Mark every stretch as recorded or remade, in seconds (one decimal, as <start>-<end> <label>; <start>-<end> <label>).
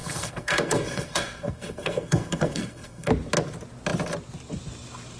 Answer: 0.0-3.1 remade; 3.1-5.2 recorded